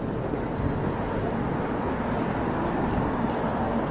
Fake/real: real